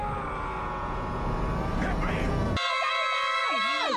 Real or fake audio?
real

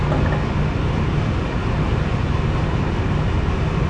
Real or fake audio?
real